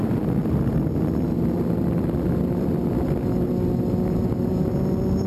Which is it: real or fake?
real